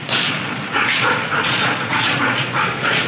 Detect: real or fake fake